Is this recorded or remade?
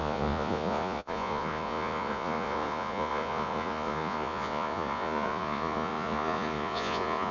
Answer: remade